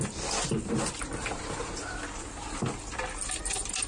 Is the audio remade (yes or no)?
no